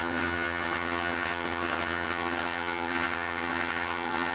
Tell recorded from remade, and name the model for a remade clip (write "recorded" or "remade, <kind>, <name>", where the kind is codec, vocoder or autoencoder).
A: remade, vocoder, HiFi-GAN